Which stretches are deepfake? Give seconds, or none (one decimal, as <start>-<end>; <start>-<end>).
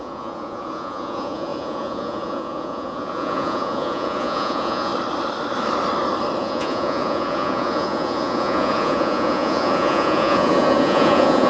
0.0-4.9; 6.4-11.5